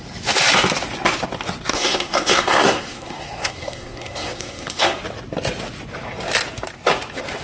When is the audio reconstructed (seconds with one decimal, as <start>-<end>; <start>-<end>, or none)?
1.7-5.0

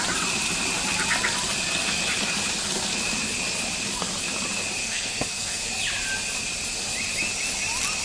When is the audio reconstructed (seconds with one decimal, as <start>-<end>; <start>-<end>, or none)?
4.8-5.7

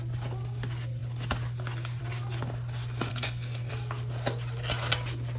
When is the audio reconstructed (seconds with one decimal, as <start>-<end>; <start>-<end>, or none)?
3.1-3.7

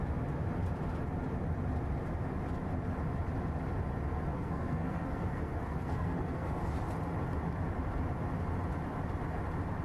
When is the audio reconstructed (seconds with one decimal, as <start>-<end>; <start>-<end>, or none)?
4.3-6.6

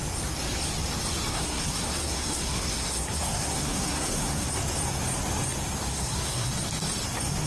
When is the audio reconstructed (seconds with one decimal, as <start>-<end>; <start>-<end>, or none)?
1.3-4.5; 5.9-6.5